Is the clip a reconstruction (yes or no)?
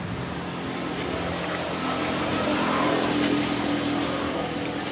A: no